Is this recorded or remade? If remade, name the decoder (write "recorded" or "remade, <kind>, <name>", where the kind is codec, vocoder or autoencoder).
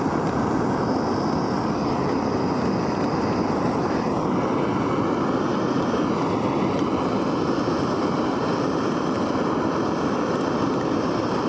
recorded